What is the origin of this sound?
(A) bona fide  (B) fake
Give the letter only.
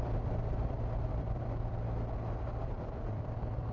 B